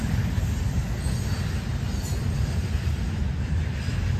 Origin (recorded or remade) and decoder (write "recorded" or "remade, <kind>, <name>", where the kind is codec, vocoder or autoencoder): recorded